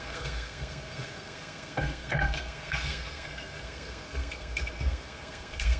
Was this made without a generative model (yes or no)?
no